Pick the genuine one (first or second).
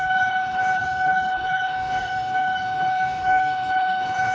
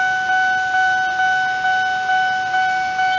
second